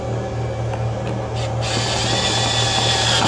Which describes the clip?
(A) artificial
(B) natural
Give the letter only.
B